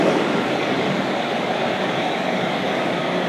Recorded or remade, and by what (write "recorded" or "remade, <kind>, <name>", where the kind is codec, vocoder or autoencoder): remade, codec, DAC